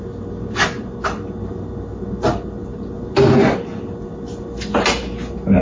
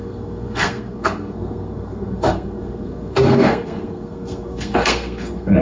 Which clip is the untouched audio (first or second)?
first